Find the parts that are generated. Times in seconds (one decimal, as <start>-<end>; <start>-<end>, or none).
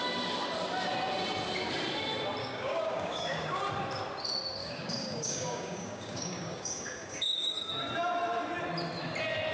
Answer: 2.4-3.6; 4.6-7.7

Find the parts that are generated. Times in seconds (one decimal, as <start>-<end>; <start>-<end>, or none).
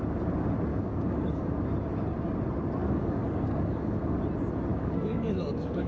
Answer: 0.7-1.5; 2.8-4.2; 4.7-5.9